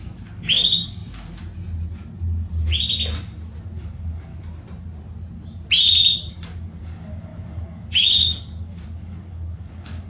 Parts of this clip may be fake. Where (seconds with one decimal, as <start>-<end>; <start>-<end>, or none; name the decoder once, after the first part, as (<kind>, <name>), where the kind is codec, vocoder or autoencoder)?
0.0-1.0 (codec, DAC); 3.8-4.3; 6.3-10.1